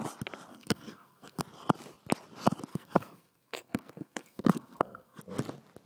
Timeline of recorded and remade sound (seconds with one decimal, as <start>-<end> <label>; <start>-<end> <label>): 0.0-0.5 recorded; 0.5-1.4 remade; 1.4-2.7 recorded; 2.7-5.2 remade; 5.2-5.9 recorded